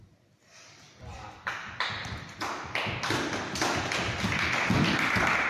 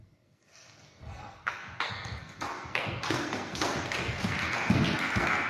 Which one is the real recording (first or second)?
first